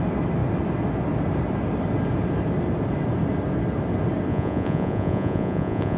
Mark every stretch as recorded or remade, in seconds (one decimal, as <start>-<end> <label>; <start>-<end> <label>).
0.0-4.3 recorded; 4.3-6.0 remade

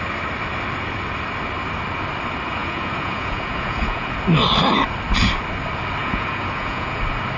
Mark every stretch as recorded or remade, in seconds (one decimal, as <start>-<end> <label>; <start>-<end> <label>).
0.0-2.6 recorded; 2.6-4.2 remade; 4.2-6.0 recorded; 6.0-7.0 remade; 7.0-7.4 recorded

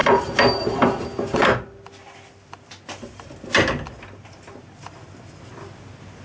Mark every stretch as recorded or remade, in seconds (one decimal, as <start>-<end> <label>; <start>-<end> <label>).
0.0-6.2 recorded

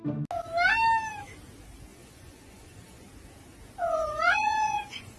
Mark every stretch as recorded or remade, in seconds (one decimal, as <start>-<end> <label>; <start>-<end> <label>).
0.0-1.9 recorded; 1.9-3.1 remade; 3.1-3.9 recorded; 3.9-5.2 remade

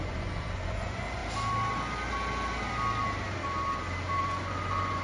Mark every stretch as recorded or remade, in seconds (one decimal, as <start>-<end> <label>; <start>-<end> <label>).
0.0-1.2 remade; 1.2-4.2 recorded; 4.2-5.0 remade